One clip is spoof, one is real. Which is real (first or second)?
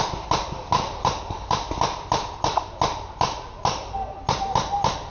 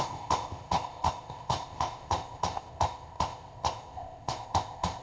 first